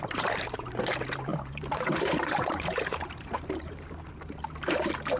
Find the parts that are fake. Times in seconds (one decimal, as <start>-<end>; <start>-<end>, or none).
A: 0.0-5.2